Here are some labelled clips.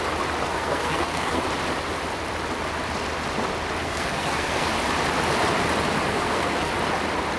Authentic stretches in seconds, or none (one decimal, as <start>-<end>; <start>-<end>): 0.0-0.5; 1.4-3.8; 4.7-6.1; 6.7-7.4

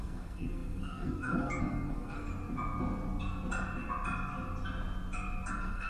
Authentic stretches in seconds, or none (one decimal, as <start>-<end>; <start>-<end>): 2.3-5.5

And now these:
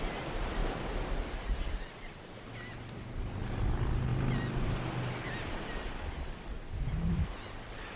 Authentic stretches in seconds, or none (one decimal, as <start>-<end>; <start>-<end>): 0.0-8.0